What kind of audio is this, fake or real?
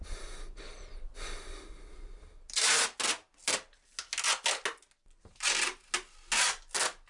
real